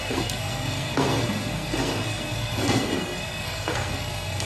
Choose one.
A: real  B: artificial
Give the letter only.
B